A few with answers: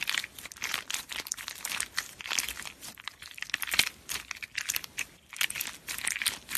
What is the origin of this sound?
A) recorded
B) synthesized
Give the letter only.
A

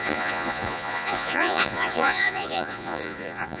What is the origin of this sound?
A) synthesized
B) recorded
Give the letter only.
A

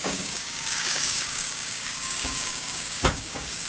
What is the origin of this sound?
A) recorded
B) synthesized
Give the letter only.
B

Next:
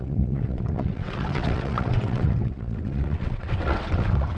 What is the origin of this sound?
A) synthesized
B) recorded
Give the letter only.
A